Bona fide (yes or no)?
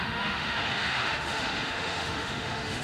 no